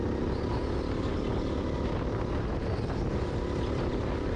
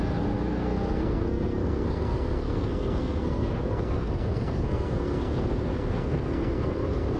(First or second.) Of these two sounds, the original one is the first